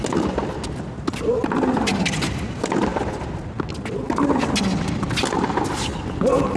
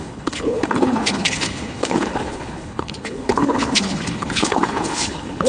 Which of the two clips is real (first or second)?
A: first